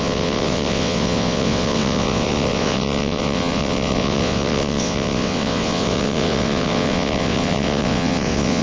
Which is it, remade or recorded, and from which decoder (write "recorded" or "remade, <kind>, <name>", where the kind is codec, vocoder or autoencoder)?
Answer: remade, vocoder, WaveNeXt